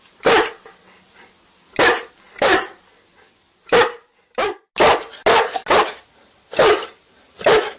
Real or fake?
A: real